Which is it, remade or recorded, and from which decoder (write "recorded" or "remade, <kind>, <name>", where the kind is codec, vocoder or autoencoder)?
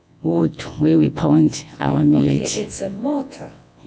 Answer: remade, vocoder, WaveNeXt